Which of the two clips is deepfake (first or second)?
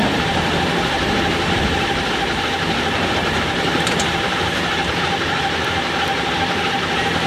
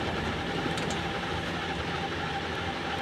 first